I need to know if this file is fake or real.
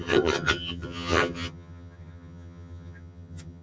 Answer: fake